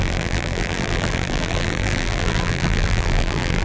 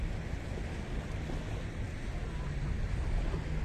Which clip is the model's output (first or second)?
first